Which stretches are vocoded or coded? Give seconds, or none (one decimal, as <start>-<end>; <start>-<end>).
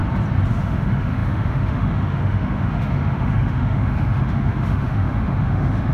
0.5-5.9